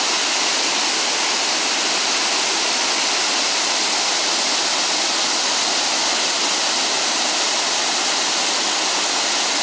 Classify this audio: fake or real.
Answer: real